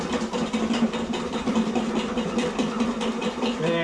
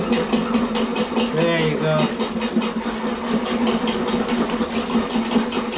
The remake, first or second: first